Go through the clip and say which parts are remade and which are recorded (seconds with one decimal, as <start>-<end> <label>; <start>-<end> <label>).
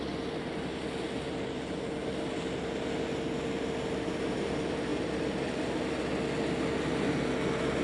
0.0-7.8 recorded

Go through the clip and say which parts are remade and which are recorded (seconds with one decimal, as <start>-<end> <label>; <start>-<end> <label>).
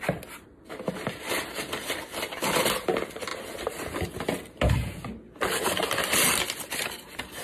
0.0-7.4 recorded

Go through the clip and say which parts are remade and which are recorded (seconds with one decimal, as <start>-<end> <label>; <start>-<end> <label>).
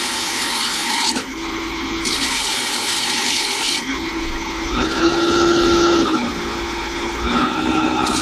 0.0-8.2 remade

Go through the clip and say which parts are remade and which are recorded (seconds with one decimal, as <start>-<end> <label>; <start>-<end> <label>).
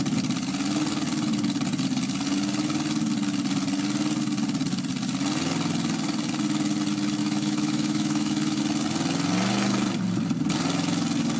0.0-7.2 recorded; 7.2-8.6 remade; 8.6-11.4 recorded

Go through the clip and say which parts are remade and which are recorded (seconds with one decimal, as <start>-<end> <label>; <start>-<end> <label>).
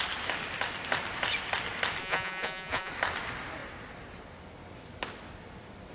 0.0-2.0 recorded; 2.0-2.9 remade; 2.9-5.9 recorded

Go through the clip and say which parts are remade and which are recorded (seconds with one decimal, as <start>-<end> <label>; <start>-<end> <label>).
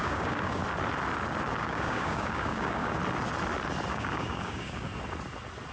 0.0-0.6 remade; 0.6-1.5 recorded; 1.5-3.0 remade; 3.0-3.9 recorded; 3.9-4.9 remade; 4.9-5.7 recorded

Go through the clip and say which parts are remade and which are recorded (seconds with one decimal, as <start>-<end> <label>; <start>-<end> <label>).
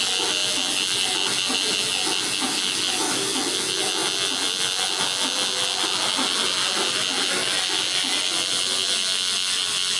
0.0-10.0 recorded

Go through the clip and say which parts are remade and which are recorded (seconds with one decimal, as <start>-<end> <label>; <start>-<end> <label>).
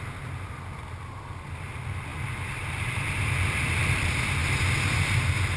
0.0-5.6 recorded